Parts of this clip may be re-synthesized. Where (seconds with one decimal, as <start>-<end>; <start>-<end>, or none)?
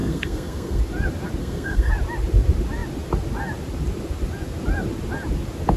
0.0-0.8; 1.4-1.9